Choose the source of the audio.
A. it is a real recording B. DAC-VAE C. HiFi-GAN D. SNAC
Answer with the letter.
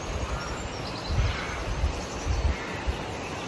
A